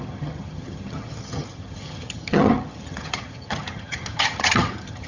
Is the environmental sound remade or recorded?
remade